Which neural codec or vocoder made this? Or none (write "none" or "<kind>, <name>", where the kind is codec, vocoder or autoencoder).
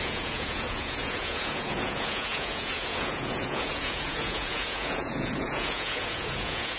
vocoder, Vocos